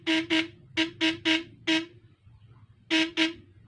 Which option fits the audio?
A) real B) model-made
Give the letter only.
A